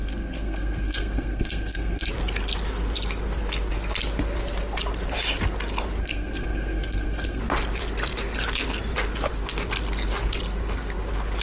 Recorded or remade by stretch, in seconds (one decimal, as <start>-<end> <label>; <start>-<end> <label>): 0.0-2.1 remade; 2.1-6.0 recorded; 6.0-7.4 remade; 7.4-11.4 recorded